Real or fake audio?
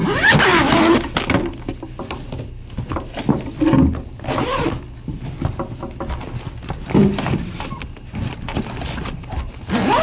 real